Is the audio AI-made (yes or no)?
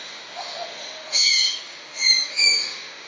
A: yes